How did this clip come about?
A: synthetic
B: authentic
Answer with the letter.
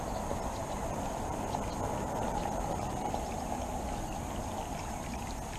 B